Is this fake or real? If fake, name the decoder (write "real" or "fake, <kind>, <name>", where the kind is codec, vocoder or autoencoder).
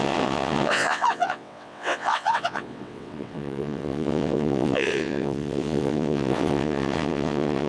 fake, vocoder, WaveNeXt